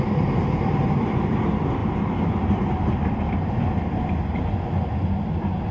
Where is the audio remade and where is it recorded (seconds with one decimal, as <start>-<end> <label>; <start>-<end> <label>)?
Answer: 0.0-5.7 recorded